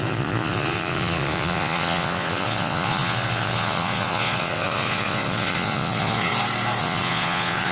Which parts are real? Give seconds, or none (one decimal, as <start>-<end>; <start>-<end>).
6.3-6.8